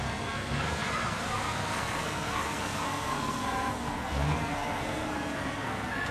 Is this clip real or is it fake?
fake